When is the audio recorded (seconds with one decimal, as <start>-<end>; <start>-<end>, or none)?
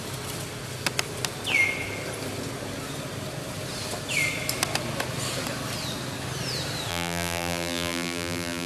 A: 0.0-6.9